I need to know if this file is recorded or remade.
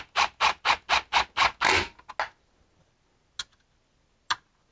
recorded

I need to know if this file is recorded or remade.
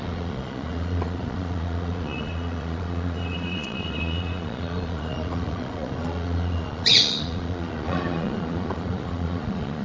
remade